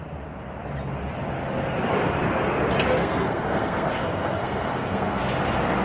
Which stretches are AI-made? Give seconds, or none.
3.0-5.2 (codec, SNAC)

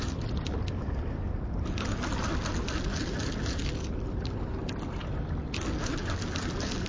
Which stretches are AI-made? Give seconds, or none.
none

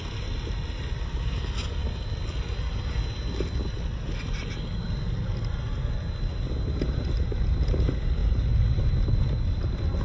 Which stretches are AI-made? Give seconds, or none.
none

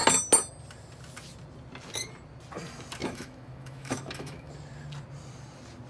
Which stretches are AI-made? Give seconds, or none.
3.0-4.5 (autoencoder, DAC-VAE)

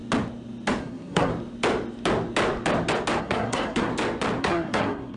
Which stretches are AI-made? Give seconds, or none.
0.8-1.3 (codec, SNAC); 3.2-3.9; 4.4-5.2

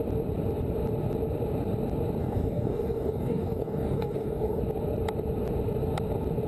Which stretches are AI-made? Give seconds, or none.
2.2-4.6 (codec, DAC)

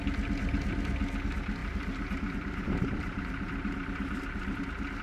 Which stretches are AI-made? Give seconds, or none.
1.6-4.6 (vocoder, BigVGAN v2)

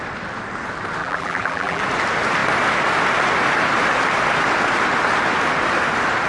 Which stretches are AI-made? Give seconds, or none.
1.0-1.8 (vocoder, BigVGAN v2)